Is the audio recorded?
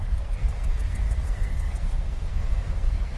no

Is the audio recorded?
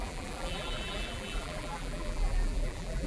no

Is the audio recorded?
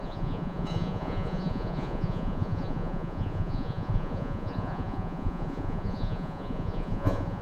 no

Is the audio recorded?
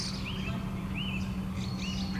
yes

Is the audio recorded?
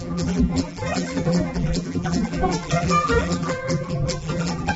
no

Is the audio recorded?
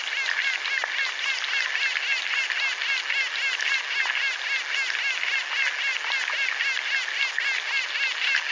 yes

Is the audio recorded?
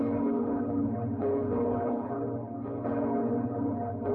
no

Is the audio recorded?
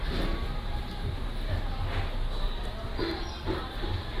yes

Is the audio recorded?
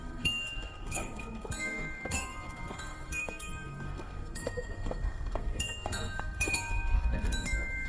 no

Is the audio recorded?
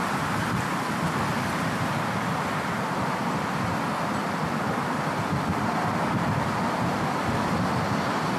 yes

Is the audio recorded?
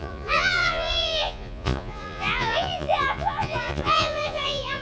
no